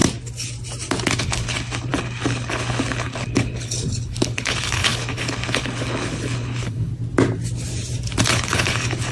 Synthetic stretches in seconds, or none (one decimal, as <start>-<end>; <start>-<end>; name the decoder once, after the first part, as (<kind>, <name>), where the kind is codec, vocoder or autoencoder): 1.2-6.9 (codec, HILCodec); 8.3-9.1